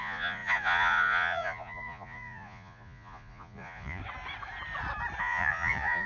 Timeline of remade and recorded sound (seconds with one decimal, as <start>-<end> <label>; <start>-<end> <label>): 0.0-4.0 remade; 4.0-5.2 recorded; 5.2-6.1 remade